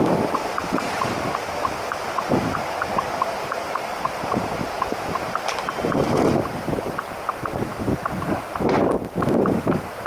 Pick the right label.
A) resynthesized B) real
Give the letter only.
A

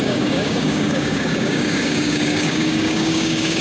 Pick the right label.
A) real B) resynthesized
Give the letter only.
B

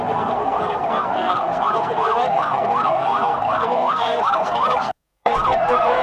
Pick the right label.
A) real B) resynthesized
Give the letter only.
B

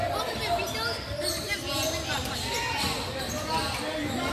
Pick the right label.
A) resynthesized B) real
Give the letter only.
B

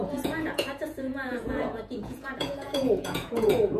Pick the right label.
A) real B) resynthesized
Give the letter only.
B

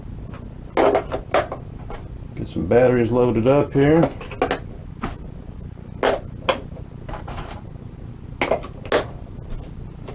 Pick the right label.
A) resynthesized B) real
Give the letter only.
B